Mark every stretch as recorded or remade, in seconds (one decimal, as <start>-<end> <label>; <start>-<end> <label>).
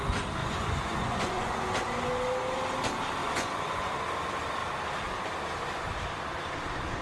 0.0-0.4 recorded; 0.4-1.7 remade; 1.7-3.2 recorded; 3.2-3.9 remade; 3.9-7.0 recorded